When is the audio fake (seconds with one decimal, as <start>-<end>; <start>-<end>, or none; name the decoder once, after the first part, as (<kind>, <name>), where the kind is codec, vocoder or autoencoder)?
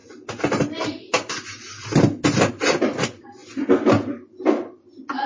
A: 0.6-1.8 (vocoder, BigVGAN v2); 2.5-3.4; 4.1-5.3